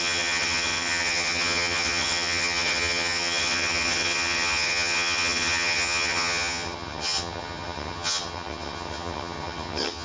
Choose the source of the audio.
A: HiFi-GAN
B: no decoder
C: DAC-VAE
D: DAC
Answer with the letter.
A